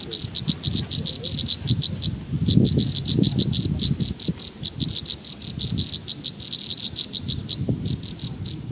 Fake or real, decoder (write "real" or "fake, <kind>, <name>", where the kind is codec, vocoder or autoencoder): real